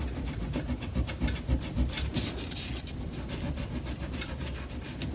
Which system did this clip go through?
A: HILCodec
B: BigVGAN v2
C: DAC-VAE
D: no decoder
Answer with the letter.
D